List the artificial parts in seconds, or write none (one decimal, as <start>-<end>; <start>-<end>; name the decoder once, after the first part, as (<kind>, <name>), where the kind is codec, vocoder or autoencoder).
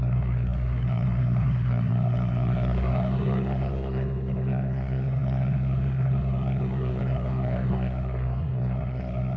0.0-9.4 (codec, SNAC)